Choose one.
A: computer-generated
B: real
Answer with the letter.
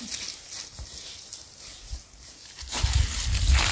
B